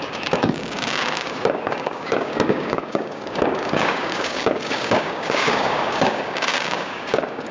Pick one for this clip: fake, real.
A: fake